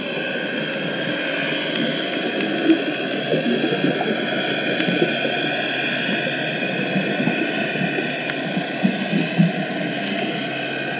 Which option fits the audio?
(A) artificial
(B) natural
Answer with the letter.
B